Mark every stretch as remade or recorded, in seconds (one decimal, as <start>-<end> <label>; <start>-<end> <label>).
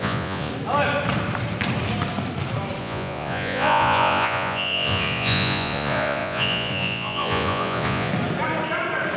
0.0-0.5 remade; 0.5-2.8 recorded; 2.8-8.1 remade; 8.1-9.2 recorded